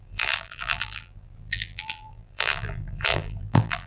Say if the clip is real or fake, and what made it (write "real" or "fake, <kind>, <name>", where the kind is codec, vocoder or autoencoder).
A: fake, vocoder, BigVGAN v2